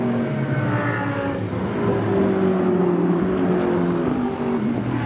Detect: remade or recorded recorded